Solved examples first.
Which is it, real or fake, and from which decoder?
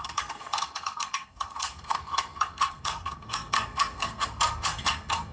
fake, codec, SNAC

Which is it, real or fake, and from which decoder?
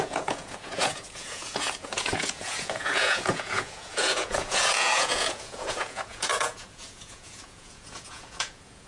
fake, vocoder, Vocos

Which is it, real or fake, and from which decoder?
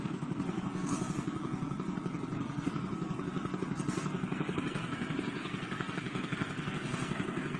fake, codec, SNAC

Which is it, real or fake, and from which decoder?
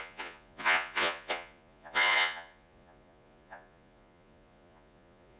fake, vocoder, Vocos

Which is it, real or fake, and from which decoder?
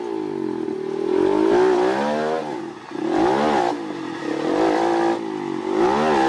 real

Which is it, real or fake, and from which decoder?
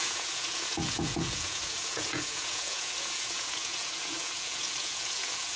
fake, vocoder, Vocos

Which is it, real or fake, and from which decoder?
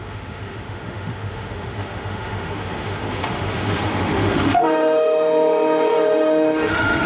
fake, autoencoder, DAC-VAE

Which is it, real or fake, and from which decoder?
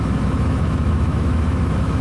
fake, autoencoder, DAC-VAE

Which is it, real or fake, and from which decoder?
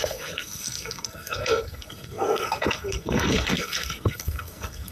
fake, codec, SNAC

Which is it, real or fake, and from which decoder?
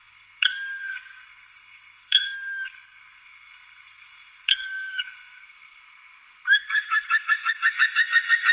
fake, codec, SNAC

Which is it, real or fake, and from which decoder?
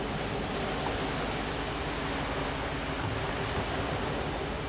real